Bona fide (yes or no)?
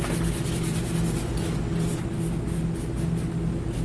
yes